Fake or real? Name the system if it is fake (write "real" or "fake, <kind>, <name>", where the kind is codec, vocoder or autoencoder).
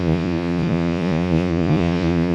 fake, vocoder, Vocos